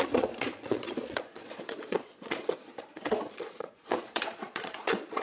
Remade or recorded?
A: remade